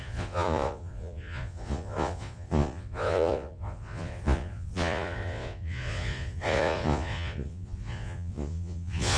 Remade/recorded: remade